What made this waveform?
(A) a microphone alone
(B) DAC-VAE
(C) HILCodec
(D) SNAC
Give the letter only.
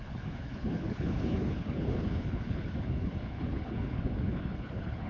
C